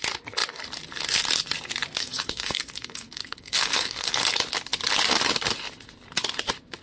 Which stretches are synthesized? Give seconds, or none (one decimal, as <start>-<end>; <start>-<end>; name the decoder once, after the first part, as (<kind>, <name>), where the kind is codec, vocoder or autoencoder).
2.0-4.2 (codec, SNAC)